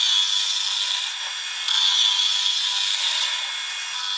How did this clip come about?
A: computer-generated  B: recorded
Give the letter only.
B